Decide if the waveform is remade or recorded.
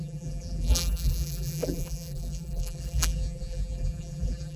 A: remade